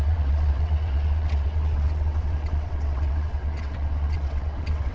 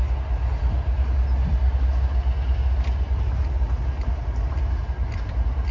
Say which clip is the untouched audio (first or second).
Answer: second